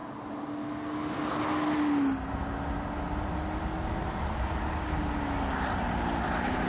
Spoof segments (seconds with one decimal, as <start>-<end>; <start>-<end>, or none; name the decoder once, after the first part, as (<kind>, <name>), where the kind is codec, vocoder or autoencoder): none